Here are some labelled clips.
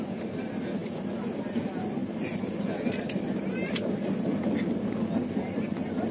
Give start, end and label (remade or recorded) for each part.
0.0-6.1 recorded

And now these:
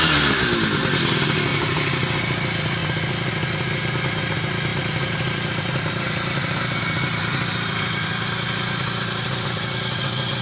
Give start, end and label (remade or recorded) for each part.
0.0-1.5 recorded; 1.5-2.1 remade; 2.1-4.7 recorded; 4.7-6.8 remade; 6.8-10.4 recorded

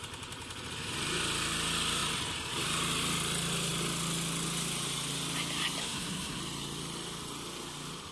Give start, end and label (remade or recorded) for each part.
0.0-5.8 recorded; 5.8-6.4 remade; 6.4-8.1 recorded

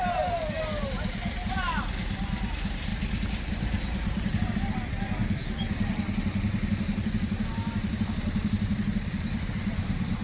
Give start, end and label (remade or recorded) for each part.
0.0-2.9 remade; 2.9-3.4 recorded; 3.4-5.2 remade; 5.2-6.2 recorded; 6.2-10.2 remade

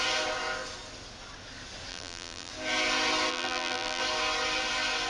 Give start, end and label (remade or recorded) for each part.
0.0-1.9 recorded; 1.9-2.5 remade; 2.5-3.3 recorded; 3.3-4.0 remade; 4.0-5.1 recorded

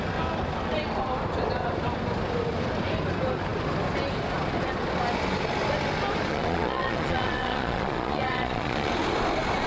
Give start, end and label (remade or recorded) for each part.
0.0-6.3 recorded; 6.3-8.9 remade; 8.9-9.7 recorded

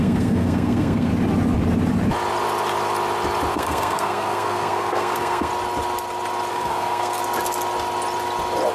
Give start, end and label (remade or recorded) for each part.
0.0-1.1 remade; 1.1-3.5 recorded; 3.5-5.5 remade; 5.5-6.5 recorded; 6.5-7.2 remade; 7.2-8.7 recorded